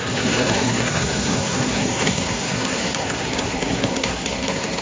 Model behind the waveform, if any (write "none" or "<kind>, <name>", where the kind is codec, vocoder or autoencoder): codec, SNAC